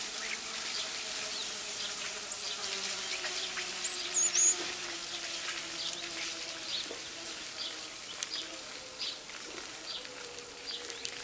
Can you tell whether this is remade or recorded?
recorded